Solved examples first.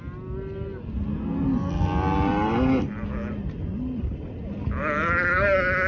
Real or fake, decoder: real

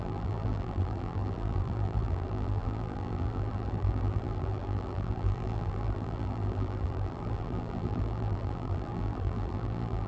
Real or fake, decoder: fake, vocoder, BigVGAN v2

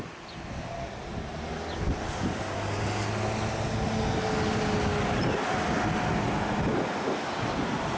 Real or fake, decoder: real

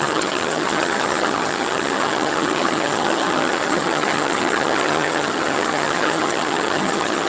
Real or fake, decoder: fake, vocoder, HiFi-GAN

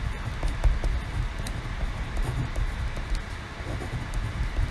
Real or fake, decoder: real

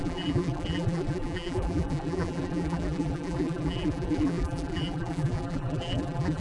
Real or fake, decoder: fake, vocoder, BigVGAN v2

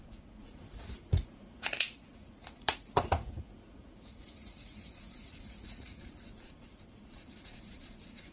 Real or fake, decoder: fake, vocoder, Vocos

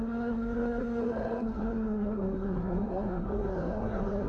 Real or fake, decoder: fake, codec, SNAC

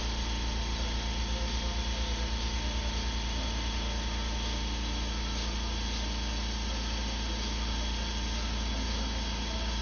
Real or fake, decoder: real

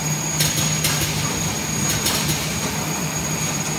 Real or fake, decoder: real